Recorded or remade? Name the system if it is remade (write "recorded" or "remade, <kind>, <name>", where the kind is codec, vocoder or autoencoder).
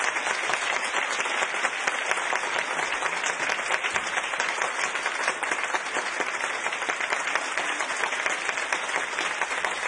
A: recorded